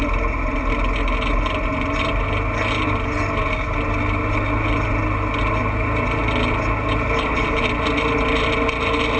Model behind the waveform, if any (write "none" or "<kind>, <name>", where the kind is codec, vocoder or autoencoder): none